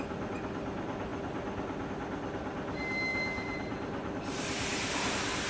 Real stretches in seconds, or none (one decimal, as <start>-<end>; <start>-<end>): 0.0-3.1; 5.1-5.5